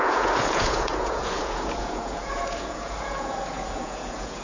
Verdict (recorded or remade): remade